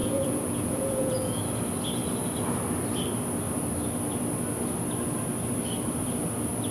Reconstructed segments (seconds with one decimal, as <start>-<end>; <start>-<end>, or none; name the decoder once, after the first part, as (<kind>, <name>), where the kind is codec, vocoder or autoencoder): 0.0-1.4 (vocoder, Vocos)